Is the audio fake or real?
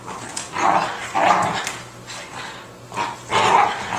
real